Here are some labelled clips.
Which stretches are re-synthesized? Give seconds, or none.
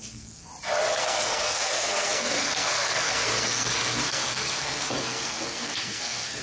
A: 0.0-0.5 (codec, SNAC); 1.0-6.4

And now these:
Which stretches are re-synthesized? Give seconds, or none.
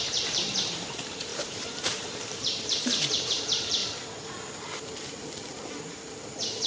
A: 0.0-3.8 (vocoder, BigVGAN v2)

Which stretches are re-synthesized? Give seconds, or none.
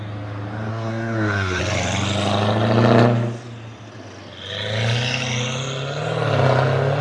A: 0.7-1.6 (codec, SNAC)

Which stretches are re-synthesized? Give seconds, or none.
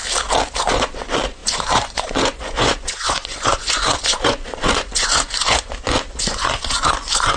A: 0.6-7.4 (vocoder, Vocos)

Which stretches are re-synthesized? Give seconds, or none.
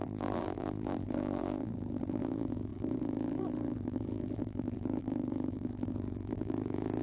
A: 0.0-7.0 (vocoder, BigVGAN v2)